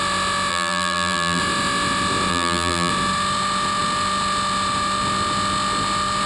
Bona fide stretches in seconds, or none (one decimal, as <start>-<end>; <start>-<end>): 0.0-0.5; 1.4-2.3; 2.9-6.3